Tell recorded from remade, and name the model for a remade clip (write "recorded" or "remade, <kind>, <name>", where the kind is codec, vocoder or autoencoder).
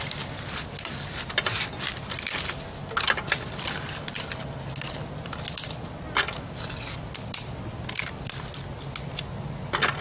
recorded